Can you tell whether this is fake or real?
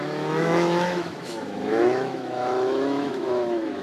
fake